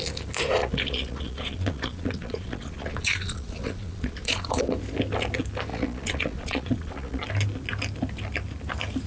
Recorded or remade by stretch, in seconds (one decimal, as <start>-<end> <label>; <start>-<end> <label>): 0.0-0.6 recorded; 0.6-4.6 remade; 4.6-5.7 recorded; 5.7-7.2 remade; 7.2-9.1 recorded